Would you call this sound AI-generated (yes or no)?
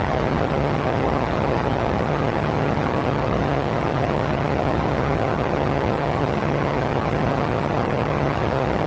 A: yes